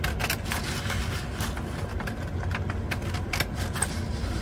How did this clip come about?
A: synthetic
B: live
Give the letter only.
B